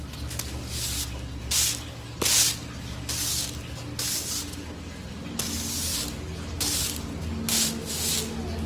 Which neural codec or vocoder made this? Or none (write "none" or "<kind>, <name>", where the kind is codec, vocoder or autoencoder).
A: none